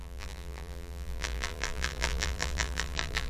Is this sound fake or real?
fake